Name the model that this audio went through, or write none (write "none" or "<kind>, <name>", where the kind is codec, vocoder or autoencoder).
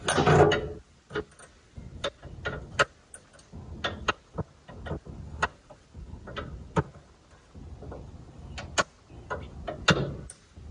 none